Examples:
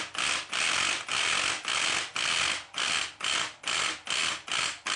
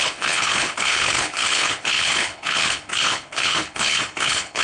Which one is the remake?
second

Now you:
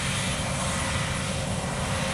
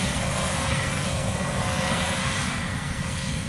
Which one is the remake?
second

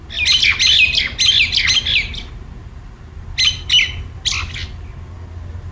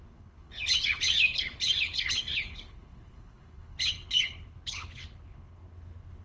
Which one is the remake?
second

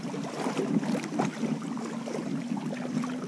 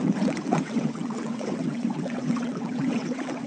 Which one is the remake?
second